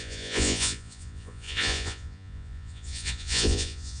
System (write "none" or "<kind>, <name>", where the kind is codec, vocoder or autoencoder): vocoder, Vocos